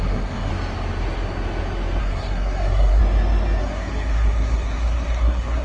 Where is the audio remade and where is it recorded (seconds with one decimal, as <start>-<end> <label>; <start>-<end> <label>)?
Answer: 0.0-0.5 remade; 0.5-2.0 recorded; 2.0-3.0 remade; 3.0-3.6 recorded; 3.6-5.6 remade